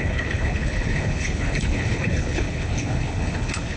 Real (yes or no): no